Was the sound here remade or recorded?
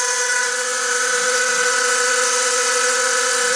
remade